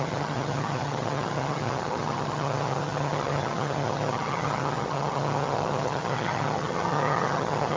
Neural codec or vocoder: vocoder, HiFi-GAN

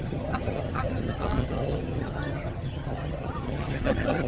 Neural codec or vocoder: vocoder, HiFi-GAN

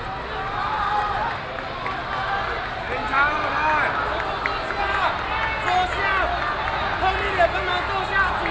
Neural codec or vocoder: none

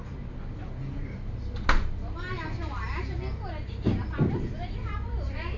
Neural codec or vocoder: none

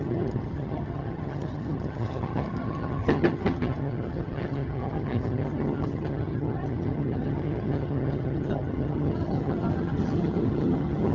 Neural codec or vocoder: vocoder, HiFi-GAN